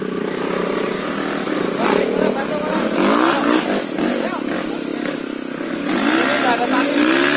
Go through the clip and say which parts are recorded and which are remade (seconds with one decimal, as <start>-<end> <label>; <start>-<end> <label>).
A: 0.0-7.4 recorded